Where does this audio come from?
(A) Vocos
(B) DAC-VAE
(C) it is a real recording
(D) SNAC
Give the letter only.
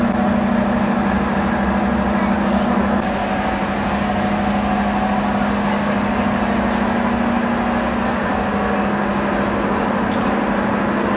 C